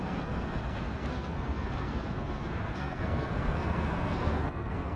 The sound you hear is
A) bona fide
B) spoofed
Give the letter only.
B